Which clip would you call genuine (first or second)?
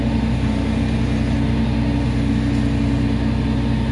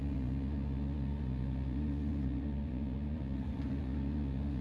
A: first